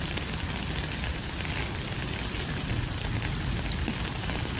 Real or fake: real